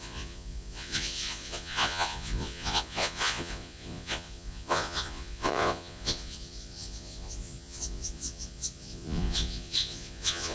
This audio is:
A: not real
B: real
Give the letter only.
A